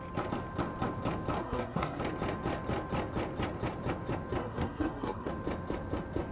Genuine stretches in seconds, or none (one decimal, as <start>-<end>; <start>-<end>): 0.0-1.4; 2.0-4.4; 5.3-6.3